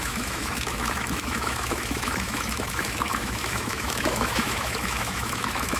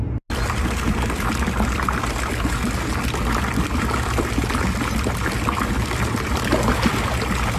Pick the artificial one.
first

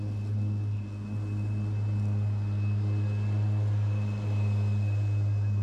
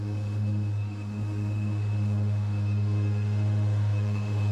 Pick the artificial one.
second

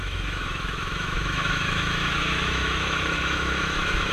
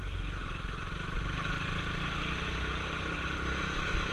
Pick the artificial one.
first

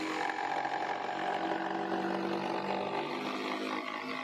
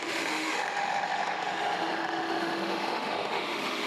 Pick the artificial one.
second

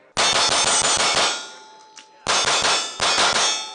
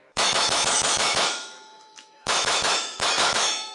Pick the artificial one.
second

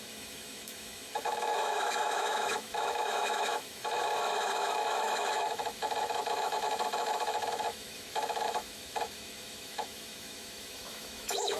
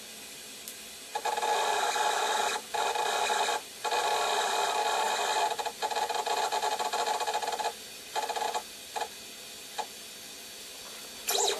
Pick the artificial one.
first